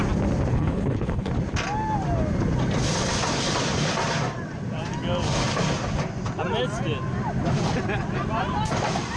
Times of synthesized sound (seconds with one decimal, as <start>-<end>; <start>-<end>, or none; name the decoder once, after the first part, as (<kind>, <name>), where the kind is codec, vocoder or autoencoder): 0.5-1.3 (codec, HILCodec)